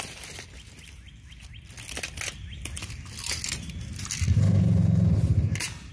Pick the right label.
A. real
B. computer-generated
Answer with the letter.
A